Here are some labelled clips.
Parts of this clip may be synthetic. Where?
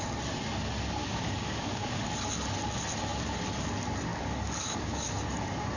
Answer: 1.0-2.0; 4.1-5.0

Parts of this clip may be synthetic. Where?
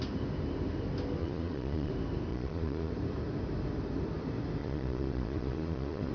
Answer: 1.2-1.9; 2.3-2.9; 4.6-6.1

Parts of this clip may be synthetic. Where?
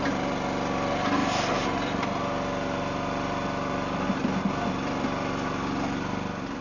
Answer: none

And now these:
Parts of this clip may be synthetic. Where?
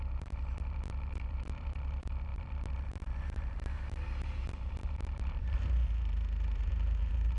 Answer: 0.0-7.4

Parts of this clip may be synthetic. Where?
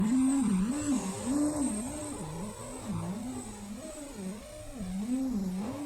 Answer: none